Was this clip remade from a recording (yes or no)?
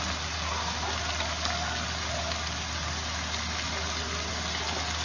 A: no